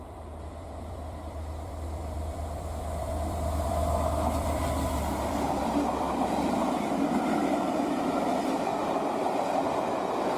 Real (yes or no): no